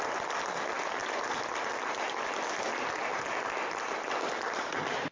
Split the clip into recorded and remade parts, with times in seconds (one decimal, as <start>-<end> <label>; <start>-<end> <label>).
0.0-5.1 recorded